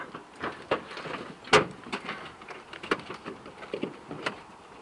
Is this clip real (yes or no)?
yes